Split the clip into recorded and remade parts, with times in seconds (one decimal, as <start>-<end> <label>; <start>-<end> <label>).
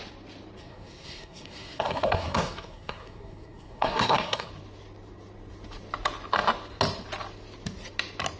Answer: 0.0-0.6 recorded; 0.6-4.5 remade; 4.5-8.4 recorded